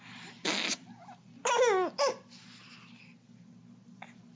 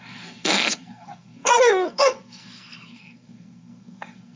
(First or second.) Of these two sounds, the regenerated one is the second